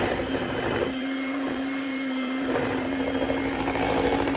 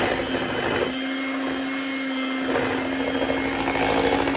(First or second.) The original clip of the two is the second